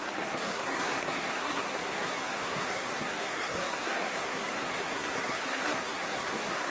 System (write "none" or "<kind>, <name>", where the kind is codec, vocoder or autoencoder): codec, SNAC